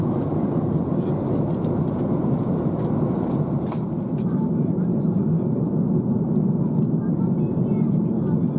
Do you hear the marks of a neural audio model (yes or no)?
no